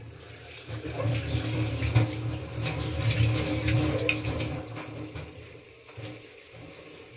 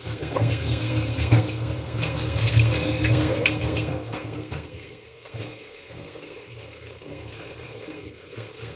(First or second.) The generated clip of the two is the second